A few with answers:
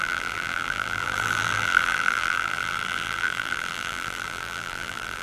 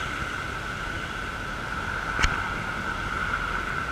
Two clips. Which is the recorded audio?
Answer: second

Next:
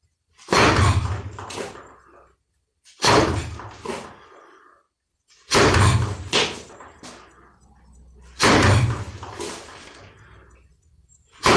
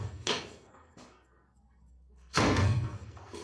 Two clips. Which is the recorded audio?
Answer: first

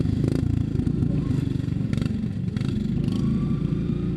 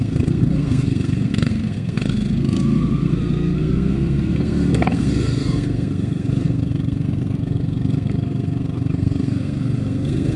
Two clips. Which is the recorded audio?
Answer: first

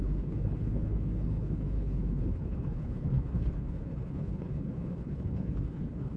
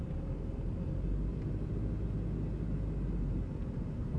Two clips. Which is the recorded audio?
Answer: second